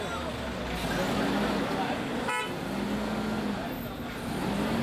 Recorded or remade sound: recorded